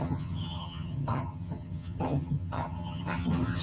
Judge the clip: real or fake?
fake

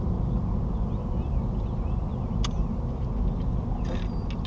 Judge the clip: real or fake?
real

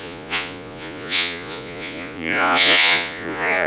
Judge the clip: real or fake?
fake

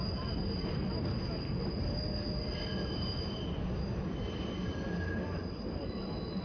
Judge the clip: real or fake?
real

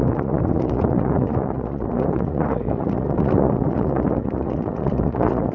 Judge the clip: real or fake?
fake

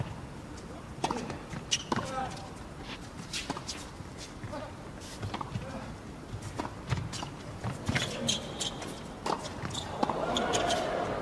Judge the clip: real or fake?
real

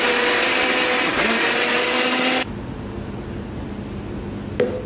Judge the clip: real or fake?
real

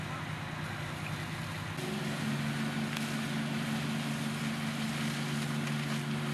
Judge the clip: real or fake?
real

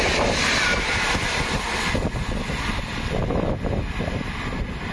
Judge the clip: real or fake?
real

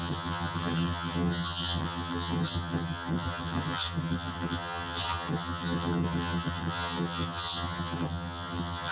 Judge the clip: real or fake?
fake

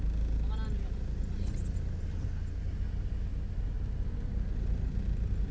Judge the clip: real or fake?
real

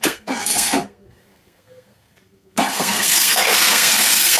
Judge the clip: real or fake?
fake